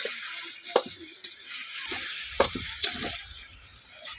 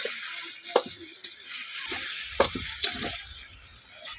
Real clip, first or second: second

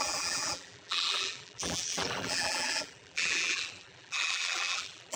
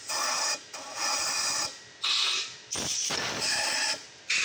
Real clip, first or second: second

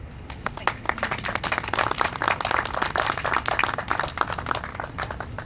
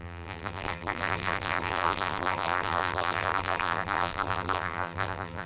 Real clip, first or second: first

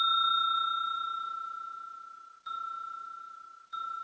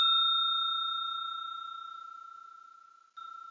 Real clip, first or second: second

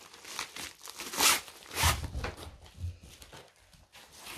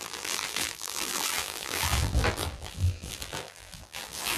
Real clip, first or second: first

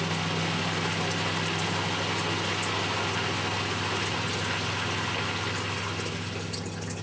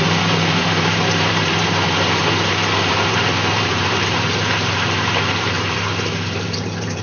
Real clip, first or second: first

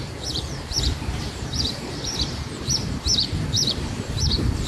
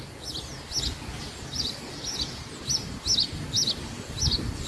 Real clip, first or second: second